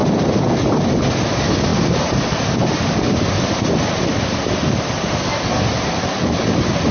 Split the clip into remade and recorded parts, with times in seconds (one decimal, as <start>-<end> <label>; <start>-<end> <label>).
0.0-6.9 recorded